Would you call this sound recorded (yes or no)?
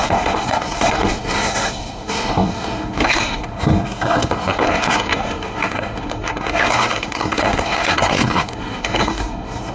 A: no